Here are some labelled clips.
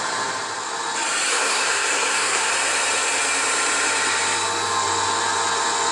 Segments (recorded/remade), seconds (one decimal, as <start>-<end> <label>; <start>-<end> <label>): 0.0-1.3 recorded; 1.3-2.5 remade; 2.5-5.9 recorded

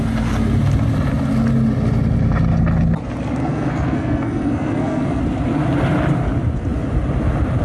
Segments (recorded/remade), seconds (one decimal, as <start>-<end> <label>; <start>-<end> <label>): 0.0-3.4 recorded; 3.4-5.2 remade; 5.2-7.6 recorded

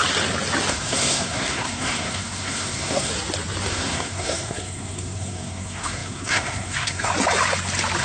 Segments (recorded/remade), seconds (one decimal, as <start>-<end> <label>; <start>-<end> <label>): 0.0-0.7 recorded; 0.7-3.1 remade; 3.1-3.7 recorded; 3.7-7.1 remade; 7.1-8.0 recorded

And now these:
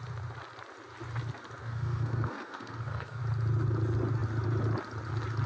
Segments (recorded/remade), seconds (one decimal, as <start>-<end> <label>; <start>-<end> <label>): 0.0-1.6 recorded; 1.6-3.2 remade; 3.2-5.5 recorded

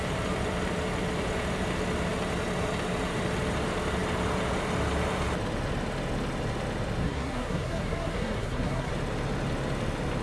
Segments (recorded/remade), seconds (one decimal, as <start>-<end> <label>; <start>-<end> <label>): 0.0-7.0 recorded; 7.0-8.9 remade; 8.9-10.2 recorded

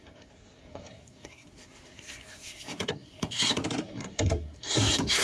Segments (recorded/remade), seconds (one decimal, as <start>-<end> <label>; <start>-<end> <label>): 0.0-5.2 remade

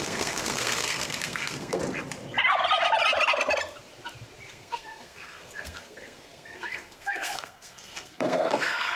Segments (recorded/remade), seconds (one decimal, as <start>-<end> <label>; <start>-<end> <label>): 0.0-1.8 remade; 1.8-4.5 recorded; 4.5-9.0 remade